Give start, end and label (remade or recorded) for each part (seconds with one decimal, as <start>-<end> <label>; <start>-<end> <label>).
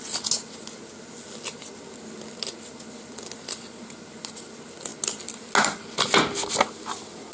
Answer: 0.0-7.3 recorded